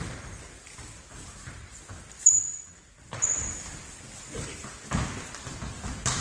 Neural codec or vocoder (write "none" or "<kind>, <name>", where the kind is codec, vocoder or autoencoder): none